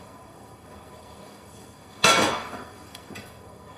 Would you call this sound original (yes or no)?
no